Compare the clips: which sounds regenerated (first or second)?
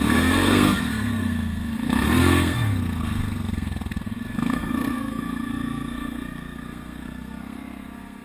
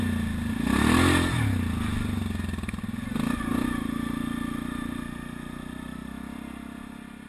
first